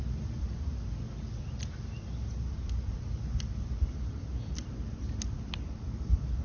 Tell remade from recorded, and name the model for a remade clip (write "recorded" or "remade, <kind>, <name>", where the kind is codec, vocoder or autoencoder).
recorded